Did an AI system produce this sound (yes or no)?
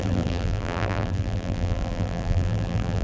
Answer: yes